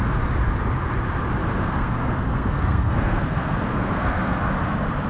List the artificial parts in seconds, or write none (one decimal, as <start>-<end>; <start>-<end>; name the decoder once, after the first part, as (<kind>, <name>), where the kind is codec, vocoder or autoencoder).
1.4-4.5 (codec, SNAC)